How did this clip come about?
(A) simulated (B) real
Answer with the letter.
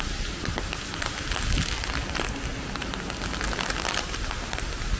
B